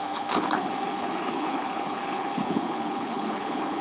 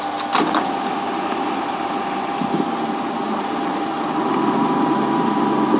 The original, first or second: second